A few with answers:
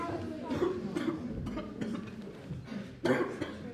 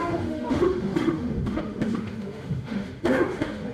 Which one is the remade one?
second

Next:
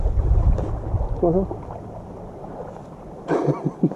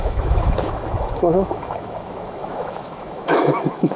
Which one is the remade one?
second